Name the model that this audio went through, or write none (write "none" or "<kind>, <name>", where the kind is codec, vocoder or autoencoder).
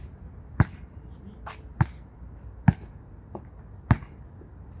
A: none